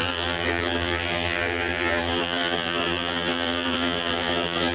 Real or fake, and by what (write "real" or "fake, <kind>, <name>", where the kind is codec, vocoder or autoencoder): fake, vocoder, BigVGAN v2